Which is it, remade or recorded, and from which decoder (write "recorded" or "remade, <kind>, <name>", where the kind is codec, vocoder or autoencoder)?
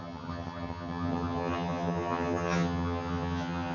remade, vocoder, HiFi-GAN